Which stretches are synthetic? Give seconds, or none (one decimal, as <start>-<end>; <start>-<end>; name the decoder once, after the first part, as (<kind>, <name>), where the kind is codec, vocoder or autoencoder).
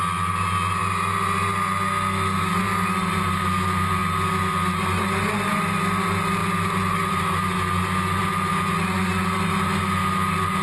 none